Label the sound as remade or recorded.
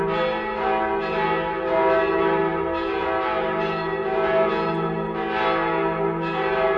recorded